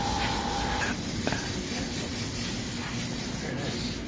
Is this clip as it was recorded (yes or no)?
yes